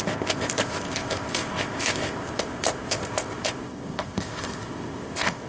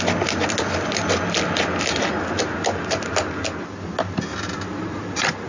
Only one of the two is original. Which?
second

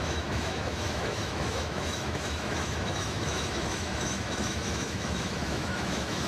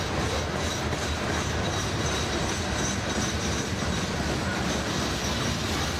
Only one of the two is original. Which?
second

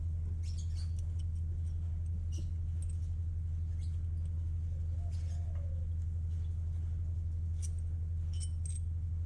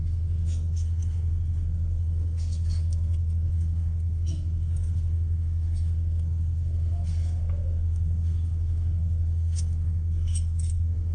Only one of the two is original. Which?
first